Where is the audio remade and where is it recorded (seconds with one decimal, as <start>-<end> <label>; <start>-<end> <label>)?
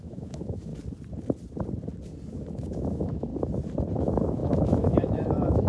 0.0-0.7 remade; 0.7-2.3 recorded; 2.3-3.3 remade; 3.3-4.0 recorded; 4.0-5.7 remade